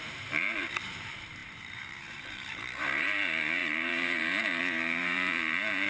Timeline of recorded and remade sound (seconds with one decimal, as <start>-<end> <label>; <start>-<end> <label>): 0.0-5.9 remade